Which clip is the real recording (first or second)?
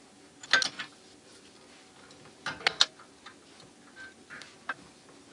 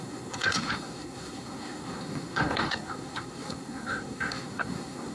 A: first